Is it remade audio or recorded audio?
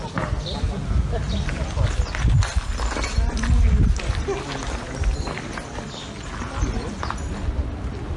recorded